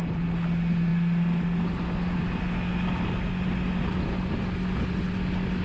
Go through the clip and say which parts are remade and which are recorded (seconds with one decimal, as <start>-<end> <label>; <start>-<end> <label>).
0.0-5.6 recorded